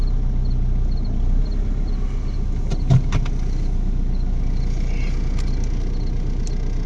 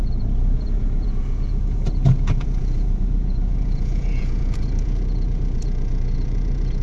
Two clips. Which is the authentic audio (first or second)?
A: first